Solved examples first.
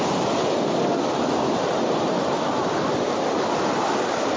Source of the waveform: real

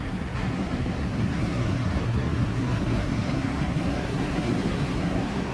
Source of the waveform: fake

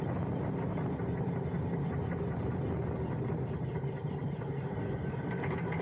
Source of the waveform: real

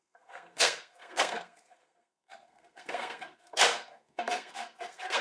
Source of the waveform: fake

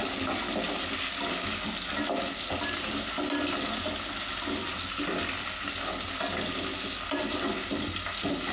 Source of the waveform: real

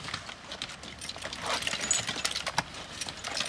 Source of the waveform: real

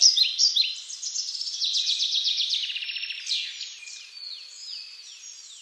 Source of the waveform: real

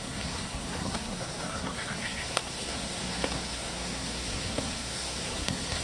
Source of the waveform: fake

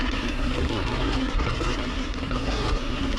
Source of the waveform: fake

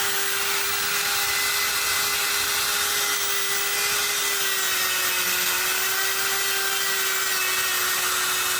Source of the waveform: real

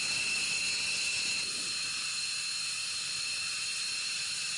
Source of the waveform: real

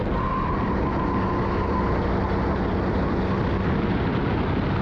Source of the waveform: real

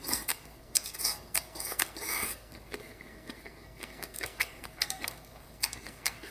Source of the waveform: fake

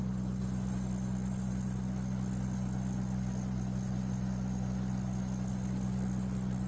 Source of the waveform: real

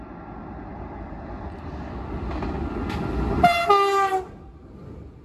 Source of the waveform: real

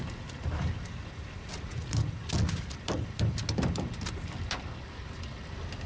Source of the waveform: real